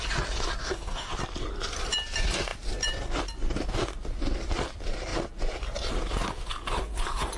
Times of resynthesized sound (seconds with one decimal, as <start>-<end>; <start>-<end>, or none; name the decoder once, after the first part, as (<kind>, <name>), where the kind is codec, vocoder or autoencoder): 0.6-1.1 (codec, DAC)